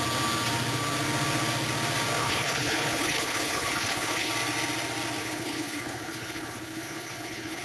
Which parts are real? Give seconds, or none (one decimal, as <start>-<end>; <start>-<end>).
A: 0.0-2.2; 4.3-5.2